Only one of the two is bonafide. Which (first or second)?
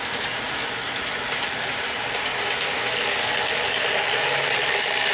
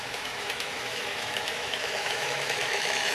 first